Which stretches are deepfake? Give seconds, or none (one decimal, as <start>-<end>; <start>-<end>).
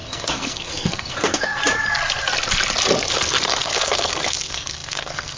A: 0.0-1.6; 3.1-5.4